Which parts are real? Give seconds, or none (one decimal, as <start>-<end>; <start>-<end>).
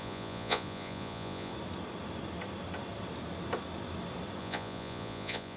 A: 1.5-4.4